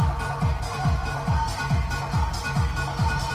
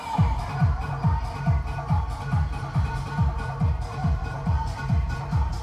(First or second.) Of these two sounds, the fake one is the second